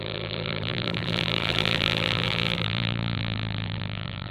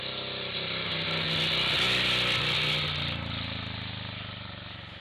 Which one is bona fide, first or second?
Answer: second